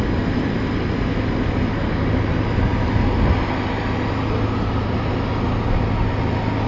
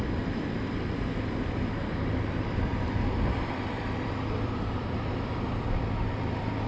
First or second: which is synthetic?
second